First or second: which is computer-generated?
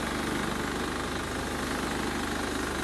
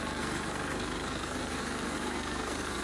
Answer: second